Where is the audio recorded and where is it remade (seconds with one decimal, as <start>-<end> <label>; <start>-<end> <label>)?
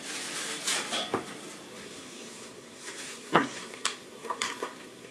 0.0-1.7 recorded; 1.7-5.1 remade